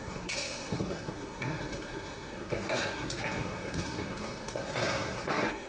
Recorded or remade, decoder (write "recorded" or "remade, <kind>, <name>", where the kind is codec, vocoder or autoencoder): remade, codec, SNAC